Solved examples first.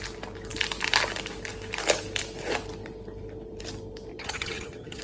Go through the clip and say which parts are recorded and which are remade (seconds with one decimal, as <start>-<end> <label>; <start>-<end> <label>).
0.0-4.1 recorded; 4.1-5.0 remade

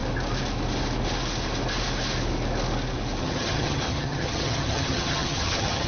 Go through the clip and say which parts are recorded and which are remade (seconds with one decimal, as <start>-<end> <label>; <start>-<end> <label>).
0.0-3.2 recorded; 3.2-5.9 remade

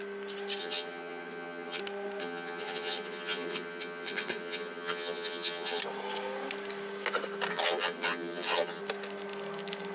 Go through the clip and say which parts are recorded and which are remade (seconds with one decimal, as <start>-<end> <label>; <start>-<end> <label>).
0.0-0.6 recorded; 0.6-1.8 remade; 1.8-2.2 recorded; 2.2-5.8 remade; 5.8-7.5 recorded; 7.5-8.8 remade; 8.8-9.9 recorded

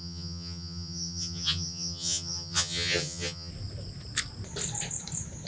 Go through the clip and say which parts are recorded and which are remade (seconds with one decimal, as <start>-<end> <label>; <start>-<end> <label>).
0.0-3.5 remade; 3.5-5.5 recorded